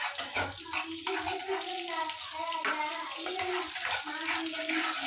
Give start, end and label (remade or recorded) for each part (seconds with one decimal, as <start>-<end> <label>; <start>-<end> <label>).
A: 0.0-5.1 recorded